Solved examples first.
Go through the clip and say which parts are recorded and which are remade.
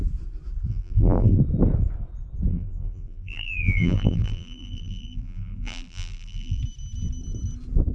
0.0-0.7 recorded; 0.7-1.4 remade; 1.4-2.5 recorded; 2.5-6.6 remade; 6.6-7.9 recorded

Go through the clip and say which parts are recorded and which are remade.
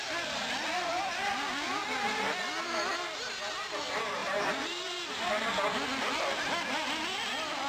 0.0-4.2 recorded; 4.2-5.2 remade; 5.2-7.7 recorded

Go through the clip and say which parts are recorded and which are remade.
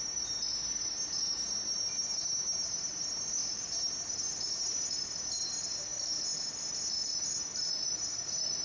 0.0-5.9 remade; 5.9-7.7 recorded; 7.7-8.6 remade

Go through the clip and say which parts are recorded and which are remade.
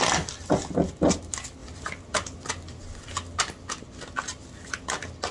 0.0-5.3 recorded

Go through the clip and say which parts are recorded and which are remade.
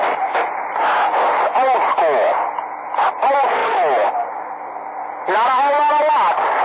0.0-3.6 recorded; 3.6-4.1 remade; 4.1-6.6 recorded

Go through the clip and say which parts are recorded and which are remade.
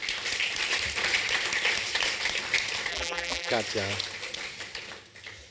0.0-2.9 recorded; 2.9-3.5 remade; 3.5-5.5 recorded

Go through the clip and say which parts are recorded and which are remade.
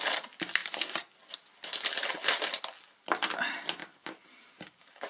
0.0-3.8 recorded; 3.8-5.1 remade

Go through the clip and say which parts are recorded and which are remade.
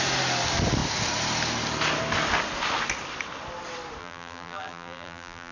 0.0-4.0 recorded; 4.0-5.5 remade